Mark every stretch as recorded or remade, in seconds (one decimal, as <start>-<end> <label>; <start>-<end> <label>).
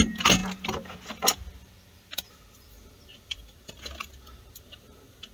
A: 0.0-5.3 recorded